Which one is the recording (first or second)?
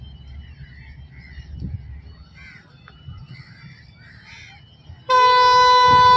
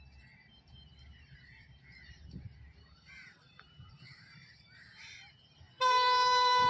first